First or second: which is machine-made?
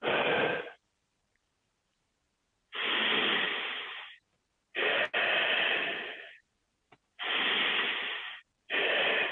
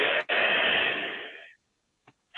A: second